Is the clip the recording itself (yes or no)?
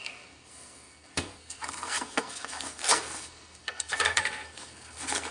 no